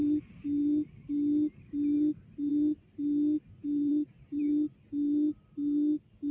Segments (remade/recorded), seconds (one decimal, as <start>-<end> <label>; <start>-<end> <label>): 0.0-6.3 recorded

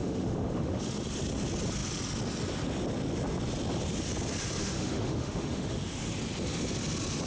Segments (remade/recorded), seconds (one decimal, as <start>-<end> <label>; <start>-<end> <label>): 0.0-0.8 remade; 0.8-4.6 recorded; 4.6-6.1 remade; 6.1-7.3 recorded

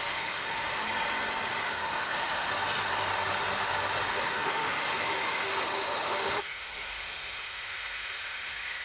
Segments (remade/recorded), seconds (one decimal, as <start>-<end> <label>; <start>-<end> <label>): 0.0-0.8 remade; 0.8-1.6 recorded; 1.6-2.5 remade; 2.5-4.1 recorded; 4.1-8.8 remade

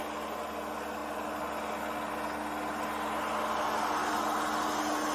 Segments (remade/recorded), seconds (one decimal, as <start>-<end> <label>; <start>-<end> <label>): 0.0-5.1 recorded

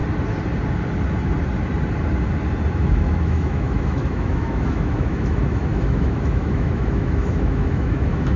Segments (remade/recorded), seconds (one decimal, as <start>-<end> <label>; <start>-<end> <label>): 0.0-2.7 recorded; 2.7-8.4 remade

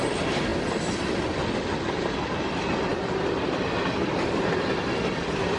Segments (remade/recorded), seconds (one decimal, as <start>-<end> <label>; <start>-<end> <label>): 0.0-5.6 recorded

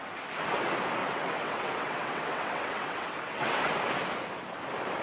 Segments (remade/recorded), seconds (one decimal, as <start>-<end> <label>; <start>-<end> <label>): 0.0-1.0 recorded; 1.0-3.7 remade; 3.7-5.0 recorded

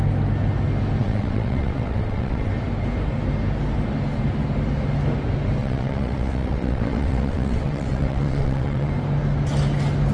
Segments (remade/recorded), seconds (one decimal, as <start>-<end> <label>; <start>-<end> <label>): 0.0-1.0 recorded; 1.0-2.5 remade; 2.5-5.6 recorded; 5.6-8.9 remade; 8.9-10.1 recorded